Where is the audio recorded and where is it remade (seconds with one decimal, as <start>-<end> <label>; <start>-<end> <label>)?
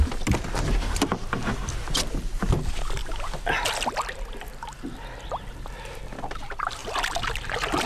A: 0.0-7.9 recorded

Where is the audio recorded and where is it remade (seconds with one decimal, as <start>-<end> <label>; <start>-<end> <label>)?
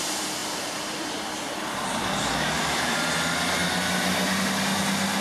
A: 0.0-0.4 recorded; 0.4-1.0 remade; 1.0-5.2 recorded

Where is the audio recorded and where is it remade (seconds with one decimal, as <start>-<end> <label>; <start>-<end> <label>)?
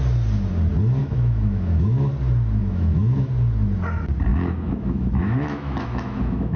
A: 0.0-1.0 recorded; 1.0-2.1 remade; 2.1-2.6 recorded; 2.6-3.3 remade; 3.3-4.3 recorded; 4.3-6.6 remade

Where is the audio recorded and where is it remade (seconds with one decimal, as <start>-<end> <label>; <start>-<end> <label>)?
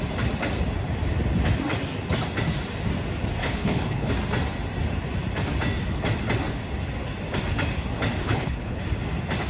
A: 0.0-3.4 recorded; 3.4-4.1 remade; 4.1-8.2 recorded; 8.2-8.8 remade; 8.8-9.5 recorded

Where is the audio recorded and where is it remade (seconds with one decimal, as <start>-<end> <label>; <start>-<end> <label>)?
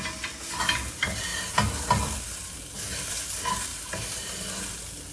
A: 0.0-3.7 recorded; 3.7-4.3 remade; 4.3-5.1 recorded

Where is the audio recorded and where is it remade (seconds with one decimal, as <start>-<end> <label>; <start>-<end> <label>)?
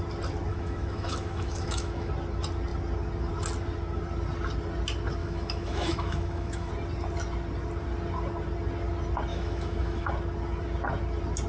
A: 0.0-0.5 recorded; 0.5-2.1 remade; 2.1-5.2 recorded; 5.2-6.7 remade; 6.7-9.3 recorded; 9.3-10.1 remade; 10.1-11.5 recorded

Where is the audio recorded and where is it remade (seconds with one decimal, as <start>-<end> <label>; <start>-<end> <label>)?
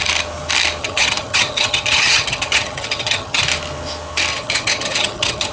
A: 0.0-0.8 recorded; 0.8-3.4 remade; 3.4-4.3 recorded; 4.3-5.5 remade